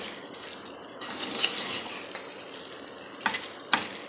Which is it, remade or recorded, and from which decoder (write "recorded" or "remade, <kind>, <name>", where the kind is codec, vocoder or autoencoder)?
recorded